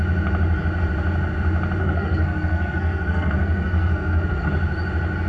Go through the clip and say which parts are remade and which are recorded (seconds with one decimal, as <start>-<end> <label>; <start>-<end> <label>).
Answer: 0.0-1.8 recorded; 1.8-4.5 remade; 4.5-5.3 recorded